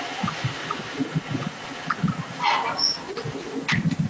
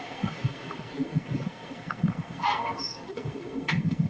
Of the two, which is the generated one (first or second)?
second